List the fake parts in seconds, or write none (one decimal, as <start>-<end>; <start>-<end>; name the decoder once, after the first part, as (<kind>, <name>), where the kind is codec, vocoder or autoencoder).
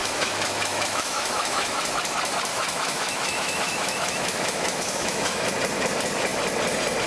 0.0-1.8 (autoencoder, DAC-VAE); 2.5-5.5